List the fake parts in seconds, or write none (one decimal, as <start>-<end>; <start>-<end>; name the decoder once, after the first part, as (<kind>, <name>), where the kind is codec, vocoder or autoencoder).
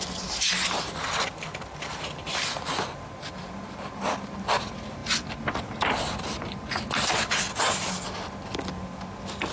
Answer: none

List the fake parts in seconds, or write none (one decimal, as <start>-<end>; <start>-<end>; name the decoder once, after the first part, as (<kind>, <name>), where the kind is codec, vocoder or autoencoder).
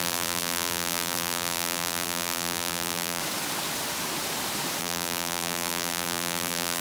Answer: 0.0-3.2 (vocoder, BigVGAN v2); 4.8-6.8